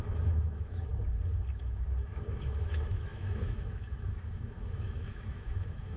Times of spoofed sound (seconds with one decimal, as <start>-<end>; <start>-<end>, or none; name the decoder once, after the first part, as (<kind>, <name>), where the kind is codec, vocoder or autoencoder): 0.0-0.9 (autoencoder, DAC-VAE); 1.6-6.0